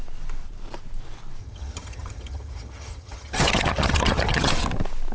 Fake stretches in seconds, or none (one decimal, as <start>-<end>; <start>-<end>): 1.4-4.5